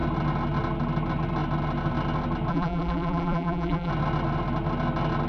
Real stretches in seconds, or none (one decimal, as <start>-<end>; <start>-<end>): 0.0-2.5; 3.9-5.3